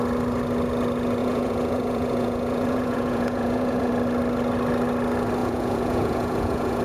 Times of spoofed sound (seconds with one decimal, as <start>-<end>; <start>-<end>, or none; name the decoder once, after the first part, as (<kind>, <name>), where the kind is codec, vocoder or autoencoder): 1.2-3.9 (vocoder, Vocos); 5.4-6.8